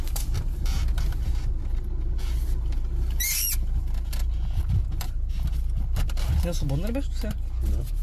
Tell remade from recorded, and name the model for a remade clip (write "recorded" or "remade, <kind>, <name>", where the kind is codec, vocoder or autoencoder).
recorded